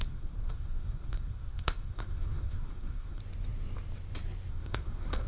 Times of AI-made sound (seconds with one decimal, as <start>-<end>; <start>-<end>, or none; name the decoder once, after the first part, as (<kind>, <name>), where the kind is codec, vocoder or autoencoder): 0.0-3.2 (codec, SNAC); 4.5-5.3